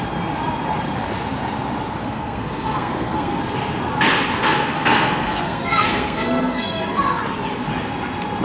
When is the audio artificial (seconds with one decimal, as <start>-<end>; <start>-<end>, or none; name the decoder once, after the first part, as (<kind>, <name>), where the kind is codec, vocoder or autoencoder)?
2.0-3.4 (codec, SNAC); 4.4-7.2